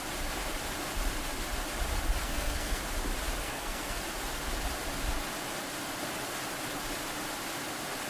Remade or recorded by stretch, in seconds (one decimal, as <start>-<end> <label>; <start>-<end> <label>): 0.0-2.2 recorded; 2.2-2.8 remade; 2.8-3.4 recorded; 3.4-4.0 remade; 4.0-8.1 recorded